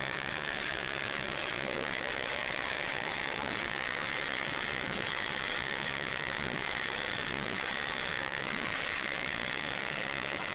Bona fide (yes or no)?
no